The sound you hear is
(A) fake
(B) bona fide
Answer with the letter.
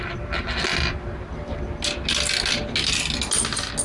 B